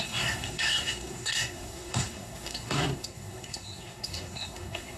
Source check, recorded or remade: remade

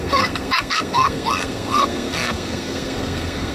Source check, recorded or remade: remade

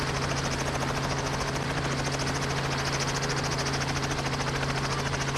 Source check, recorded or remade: recorded